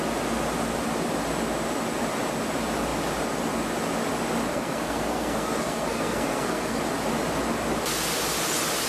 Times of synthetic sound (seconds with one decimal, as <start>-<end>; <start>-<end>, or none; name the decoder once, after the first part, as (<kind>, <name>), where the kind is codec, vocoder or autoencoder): 4.5-6.8 (codec, SNAC)